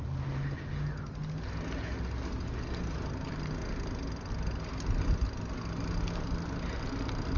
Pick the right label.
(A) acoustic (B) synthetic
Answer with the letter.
A